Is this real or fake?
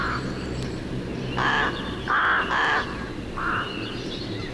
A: real